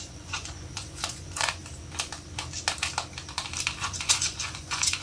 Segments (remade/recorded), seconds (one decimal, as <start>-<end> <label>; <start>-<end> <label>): 0.0-1.6 remade; 1.6-3.8 recorded; 3.8-5.0 remade